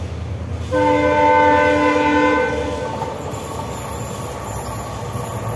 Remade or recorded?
recorded